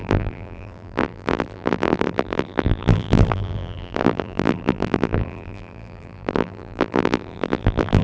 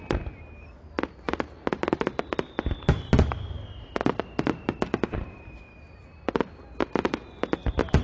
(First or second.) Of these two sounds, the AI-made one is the first